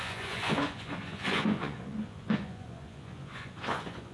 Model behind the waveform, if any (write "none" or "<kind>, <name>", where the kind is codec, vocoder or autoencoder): vocoder, Vocos